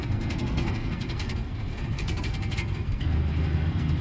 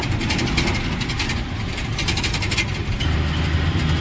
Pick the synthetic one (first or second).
first